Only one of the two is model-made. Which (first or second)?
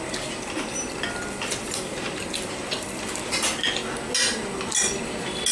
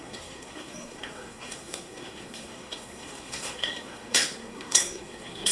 second